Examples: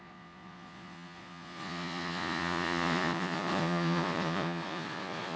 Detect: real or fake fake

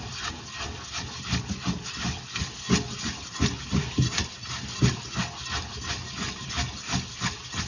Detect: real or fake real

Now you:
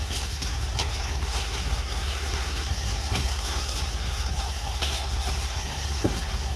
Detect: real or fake fake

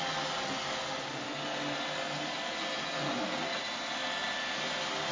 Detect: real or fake real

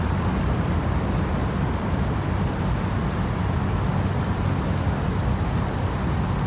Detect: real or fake real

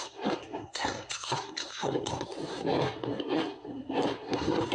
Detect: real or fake fake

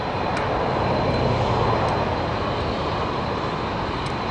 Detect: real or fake real